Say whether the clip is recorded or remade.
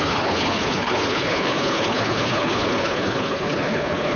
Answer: remade